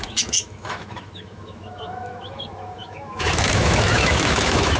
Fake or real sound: fake